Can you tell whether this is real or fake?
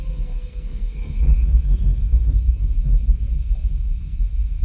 fake